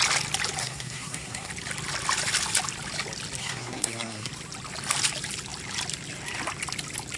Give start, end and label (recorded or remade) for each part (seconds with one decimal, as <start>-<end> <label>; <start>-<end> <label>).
0.0-0.6 recorded; 0.6-1.5 remade; 1.5-3.4 recorded; 3.4-4.3 remade; 4.3-7.2 recorded